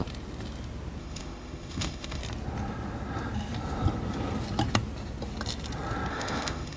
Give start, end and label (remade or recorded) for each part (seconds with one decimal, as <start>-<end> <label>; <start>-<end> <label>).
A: 0.0-1.0 recorded; 1.0-2.2 remade; 2.2-6.1 recorded; 6.1-6.8 remade